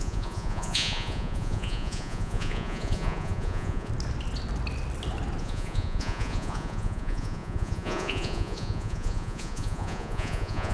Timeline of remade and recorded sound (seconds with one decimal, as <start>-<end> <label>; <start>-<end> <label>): 0.0-3.9 remade; 3.9-5.4 recorded; 5.4-10.7 remade